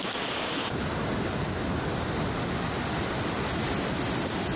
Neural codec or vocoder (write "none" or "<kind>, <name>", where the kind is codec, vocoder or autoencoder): none